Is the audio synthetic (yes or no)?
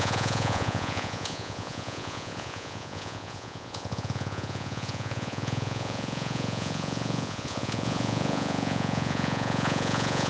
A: yes